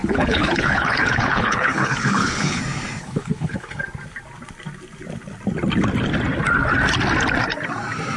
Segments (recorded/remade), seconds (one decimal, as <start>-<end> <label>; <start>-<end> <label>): 0.0-2.6 remade; 2.6-3.0 recorded; 3.0-3.8 remade; 3.8-8.2 recorded